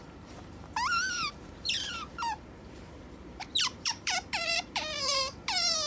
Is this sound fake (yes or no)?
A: yes